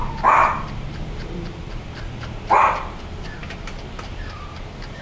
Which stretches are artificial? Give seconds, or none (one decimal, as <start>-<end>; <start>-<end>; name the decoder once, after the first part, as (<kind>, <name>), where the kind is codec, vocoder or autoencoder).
none